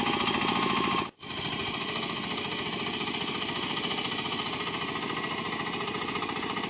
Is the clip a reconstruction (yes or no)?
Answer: no